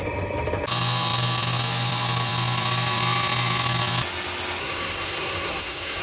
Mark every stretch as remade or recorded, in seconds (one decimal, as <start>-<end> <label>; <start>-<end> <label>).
0.0-4.6 recorded; 4.6-6.0 remade